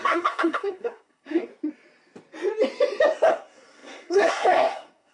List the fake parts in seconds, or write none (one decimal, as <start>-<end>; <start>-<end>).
0.0-1.5; 3.3-5.1